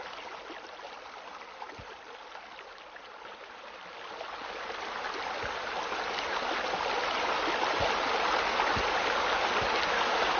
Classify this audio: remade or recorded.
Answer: recorded